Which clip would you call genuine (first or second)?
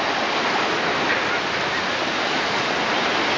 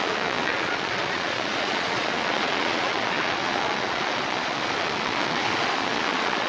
first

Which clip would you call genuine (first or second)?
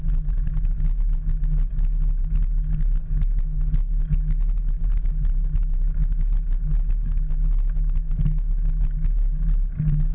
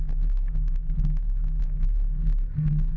first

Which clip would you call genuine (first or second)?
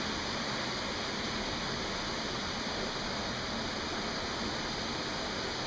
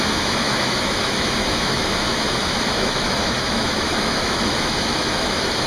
first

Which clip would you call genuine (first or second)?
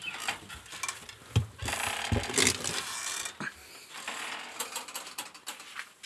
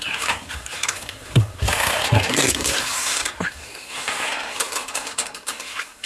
first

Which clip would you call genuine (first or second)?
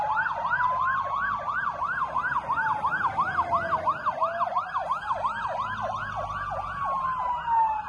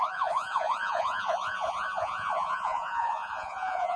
first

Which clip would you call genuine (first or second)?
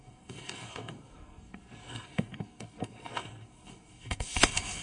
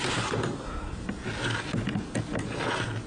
second